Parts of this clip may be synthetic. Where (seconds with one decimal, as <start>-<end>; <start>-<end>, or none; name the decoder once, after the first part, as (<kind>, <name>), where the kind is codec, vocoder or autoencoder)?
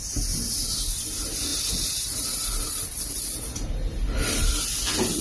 1.5-4.6 (vocoder, BigVGAN v2)